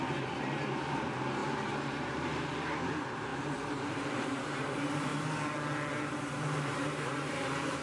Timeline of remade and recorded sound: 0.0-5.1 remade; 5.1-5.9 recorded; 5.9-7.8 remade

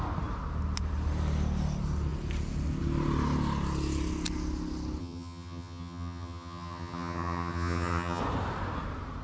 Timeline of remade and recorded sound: 0.0-5.0 recorded; 5.0-8.2 remade; 8.2-9.2 recorded

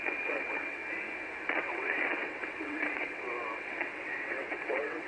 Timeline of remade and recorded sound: 0.0-0.8 remade; 0.8-1.5 recorded; 1.5-5.1 remade

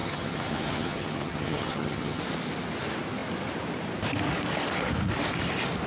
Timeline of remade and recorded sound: 0.0-2.2 remade; 2.2-5.9 recorded

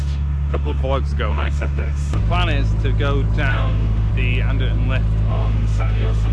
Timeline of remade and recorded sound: 0.0-0.8 remade; 0.8-1.3 recorded; 1.3-2.2 remade; 2.2-3.5 recorded; 3.5-4.1 remade; 4.1-5.3 recorded; 5.3-6.3 remade